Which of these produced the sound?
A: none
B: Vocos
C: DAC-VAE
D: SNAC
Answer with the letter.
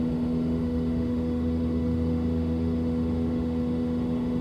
C